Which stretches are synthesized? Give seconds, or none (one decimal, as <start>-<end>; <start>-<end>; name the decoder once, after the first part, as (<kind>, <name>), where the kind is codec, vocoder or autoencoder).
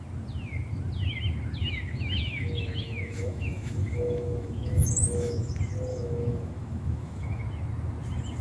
1.6-5.5 (autoencoder, DAC-VAE); 5.9-7.4